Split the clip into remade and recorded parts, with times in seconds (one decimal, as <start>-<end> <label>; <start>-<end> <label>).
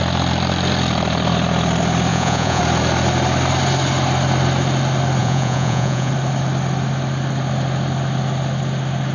0.0-2.1 recorded; 2.1-2.6 remade; 2.6-5.2 recorded; 5.2-6.1 remade; 6.1-9.1 recorded